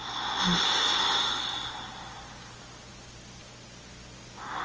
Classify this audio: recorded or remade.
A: recorded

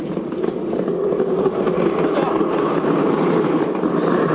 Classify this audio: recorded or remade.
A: recorded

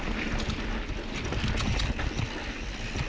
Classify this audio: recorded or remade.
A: recorded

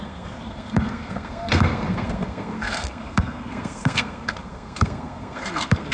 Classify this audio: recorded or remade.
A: remade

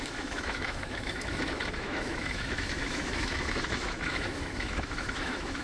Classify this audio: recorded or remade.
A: remade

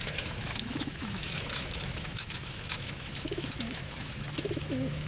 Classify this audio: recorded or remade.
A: remade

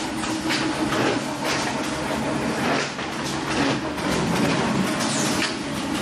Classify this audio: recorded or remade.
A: recorded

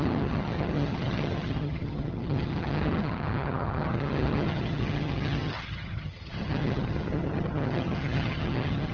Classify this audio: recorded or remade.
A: remade